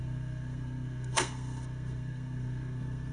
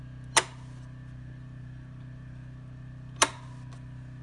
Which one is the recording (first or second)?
second